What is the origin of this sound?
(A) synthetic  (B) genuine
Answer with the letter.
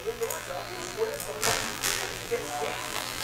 A